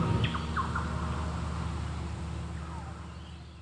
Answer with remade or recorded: recorded